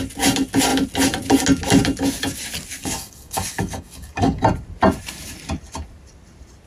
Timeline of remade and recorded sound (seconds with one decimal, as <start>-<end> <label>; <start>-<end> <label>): 0.0-2.8 recorded; 2.8-4.4 remade; 4.4-6.7 recorded